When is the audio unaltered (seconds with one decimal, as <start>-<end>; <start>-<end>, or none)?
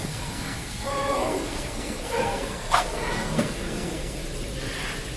4.2-5.2